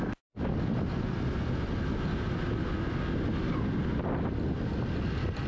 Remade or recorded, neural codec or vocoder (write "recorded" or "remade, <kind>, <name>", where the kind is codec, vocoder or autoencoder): recorded